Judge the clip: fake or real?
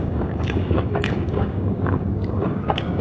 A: fake